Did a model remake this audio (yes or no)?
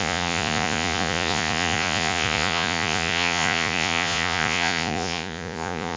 yes